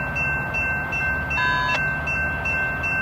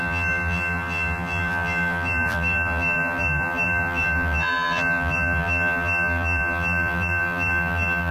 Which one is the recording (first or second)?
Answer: first